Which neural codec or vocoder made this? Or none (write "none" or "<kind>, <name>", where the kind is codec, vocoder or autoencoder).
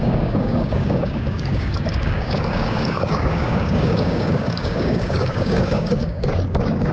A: codec, DAC